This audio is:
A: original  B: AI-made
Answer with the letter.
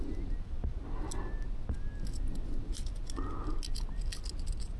A